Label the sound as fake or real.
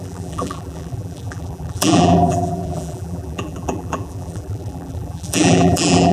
fake